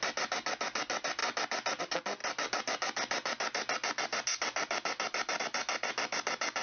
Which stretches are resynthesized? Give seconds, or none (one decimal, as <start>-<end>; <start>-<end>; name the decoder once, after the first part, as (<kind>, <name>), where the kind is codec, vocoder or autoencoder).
none